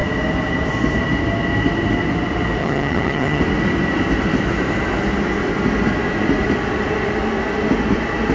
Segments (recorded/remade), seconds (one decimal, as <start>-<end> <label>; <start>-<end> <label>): 0.0-2.6 recorded; 2.6-3.4 remade; 3.4-8.3 recorded